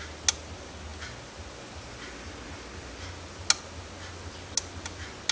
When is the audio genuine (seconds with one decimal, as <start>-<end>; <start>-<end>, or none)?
0.0-5.3